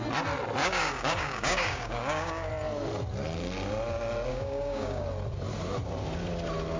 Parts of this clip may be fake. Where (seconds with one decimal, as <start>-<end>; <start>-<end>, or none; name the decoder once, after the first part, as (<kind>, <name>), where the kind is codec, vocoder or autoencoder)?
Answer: 0.6-2.5 (codec, DAC); 4.3-5.0